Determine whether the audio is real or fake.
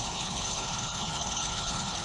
fake